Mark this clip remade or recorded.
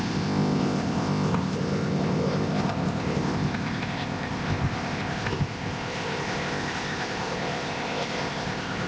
remade